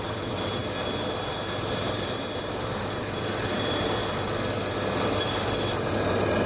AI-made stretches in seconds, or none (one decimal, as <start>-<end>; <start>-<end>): 0.0-0.6; 1.6-4.0; 5.2-6.5